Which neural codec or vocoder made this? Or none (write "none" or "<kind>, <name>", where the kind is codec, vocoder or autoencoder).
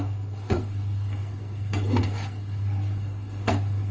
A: codec, SNAC